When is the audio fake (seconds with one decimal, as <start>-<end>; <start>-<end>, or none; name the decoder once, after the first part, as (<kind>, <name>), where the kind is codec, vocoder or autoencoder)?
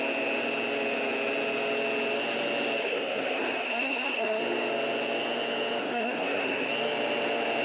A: 2.8-4.4 (codec, SNAC); 5.8-6.7